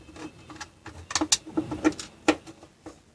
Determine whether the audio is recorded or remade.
recorded